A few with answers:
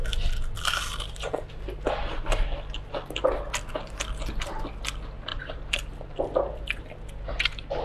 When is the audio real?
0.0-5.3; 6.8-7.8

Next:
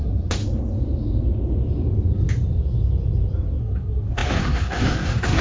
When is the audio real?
0.4-3.6

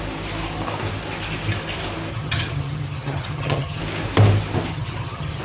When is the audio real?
0.0-2.1; 3.8-4.7

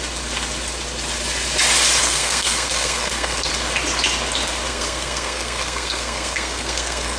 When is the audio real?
0.0-2.0; 3.5-4.7

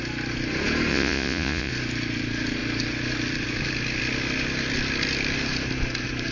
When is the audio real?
0.0-0.9; 1.7-6.3

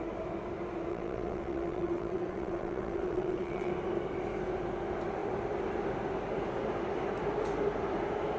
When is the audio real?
0.0-0.9; 3.7-8.4

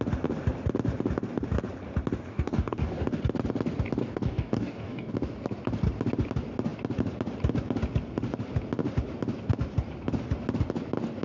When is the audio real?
0.0-2.3; 3.2-4.0; 5.1-11.2

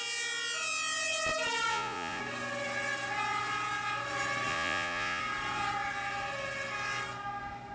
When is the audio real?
0.0-1.7; 2.2-4.5; 5.2-7.7